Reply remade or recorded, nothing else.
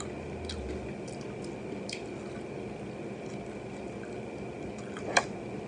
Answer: recorded